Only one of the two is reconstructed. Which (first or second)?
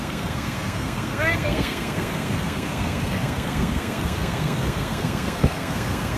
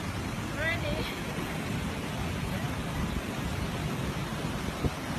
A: first